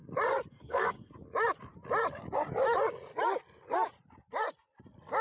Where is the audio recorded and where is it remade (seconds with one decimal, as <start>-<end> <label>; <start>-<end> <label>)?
0.0-0.5 recorded; 0.5-1.1 remade; 1.1-5.2 recorded